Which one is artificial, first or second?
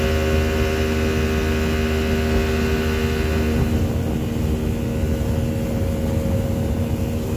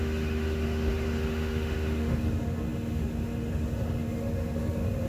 second